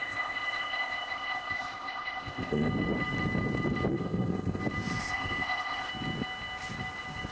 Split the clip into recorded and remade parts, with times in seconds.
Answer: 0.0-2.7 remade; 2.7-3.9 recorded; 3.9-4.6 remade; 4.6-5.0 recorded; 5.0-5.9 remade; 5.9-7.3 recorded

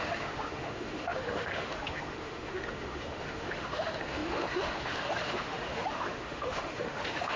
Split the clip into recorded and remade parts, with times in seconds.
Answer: 0.0-7.4 remade

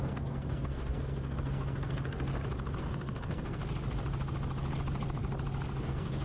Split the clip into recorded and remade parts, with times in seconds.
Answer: 0.0-2.3 remade; 2.3-2.8 recorded; 2.8-3.6 remade; 3.6-5.8 recorded; 5.8-6.2 remade

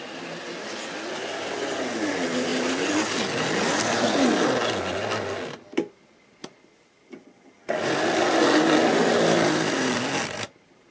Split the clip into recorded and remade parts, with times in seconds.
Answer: 0.0-10.9 recorded

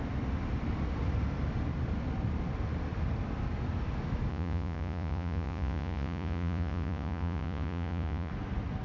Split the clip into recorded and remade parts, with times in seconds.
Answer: 0.0-4.3 recorded; 4.3-8.3 remade; 8.3-8.8 recorded

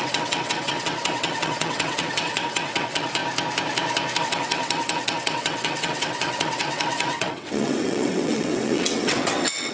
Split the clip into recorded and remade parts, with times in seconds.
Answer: 0.0-3.2 remade; 3.2-4.2 recorded; 4.2-9.7 remade

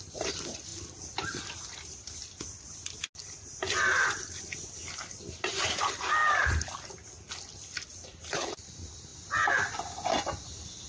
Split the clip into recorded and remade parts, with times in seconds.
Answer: 0.0-3.0 remade; 3.0-5.5 recorded; 5.5-6.2 remade; 6.2-6.9 recorded; 6.9-10.9 remade